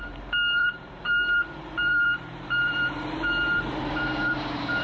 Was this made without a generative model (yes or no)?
no